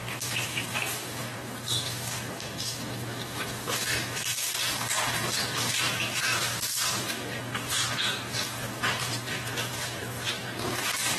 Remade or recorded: remade